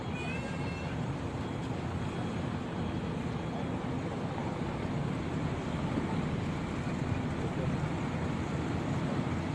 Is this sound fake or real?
real